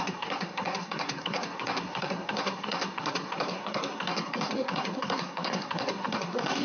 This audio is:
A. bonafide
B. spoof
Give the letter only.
B